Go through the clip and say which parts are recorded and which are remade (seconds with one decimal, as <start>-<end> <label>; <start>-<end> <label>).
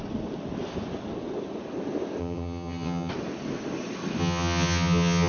0.0-2.2 recorded; 2.2-3.1 remade; 3.1-4.2 recorded; 4.2-5.3 remade